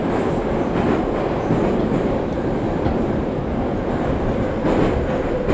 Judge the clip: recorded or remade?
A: recorded